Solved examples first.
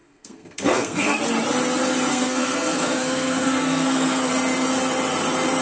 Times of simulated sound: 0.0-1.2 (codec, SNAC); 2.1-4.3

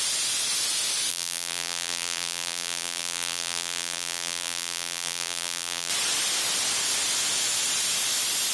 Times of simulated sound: 1.1-5.9 (vocoder, BigVGAN v2)

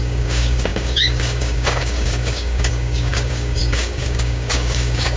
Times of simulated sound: 0.0-5.2 (codec, DAC)